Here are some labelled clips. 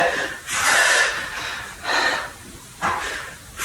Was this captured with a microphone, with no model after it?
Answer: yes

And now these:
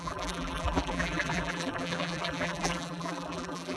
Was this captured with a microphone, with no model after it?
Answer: no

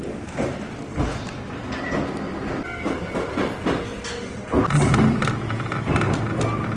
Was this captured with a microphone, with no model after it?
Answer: yes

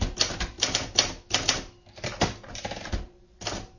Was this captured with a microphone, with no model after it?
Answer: yes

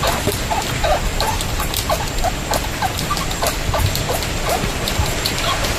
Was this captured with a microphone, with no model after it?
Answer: no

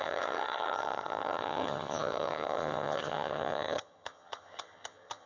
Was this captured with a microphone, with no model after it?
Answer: no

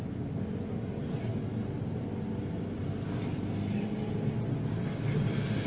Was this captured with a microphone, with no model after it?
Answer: yes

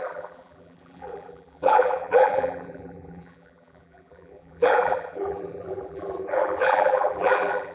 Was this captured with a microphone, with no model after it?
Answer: no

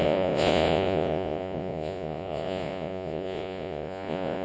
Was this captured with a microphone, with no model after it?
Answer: no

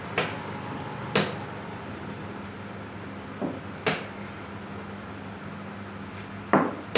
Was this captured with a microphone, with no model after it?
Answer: yes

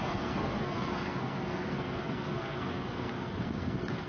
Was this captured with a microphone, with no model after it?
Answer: no